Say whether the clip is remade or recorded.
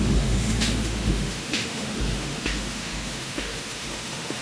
remade